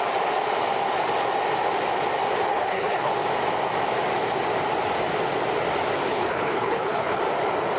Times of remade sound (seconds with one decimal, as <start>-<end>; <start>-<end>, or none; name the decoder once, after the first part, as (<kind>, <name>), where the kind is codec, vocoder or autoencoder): 2.5-3.1 (codec, HILCodec); 6.1-7.2